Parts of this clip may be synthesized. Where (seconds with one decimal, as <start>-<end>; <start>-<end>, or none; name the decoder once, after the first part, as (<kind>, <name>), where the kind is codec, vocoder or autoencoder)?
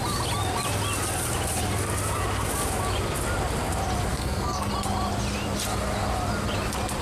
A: 4.1-4.7 (codec, SNAC)